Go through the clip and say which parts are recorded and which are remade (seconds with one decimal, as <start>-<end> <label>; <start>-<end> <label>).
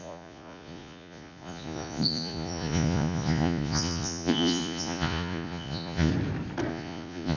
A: 0.0-6.1 remade; 6.1-6.7 recorded; 6.7-7.4 remade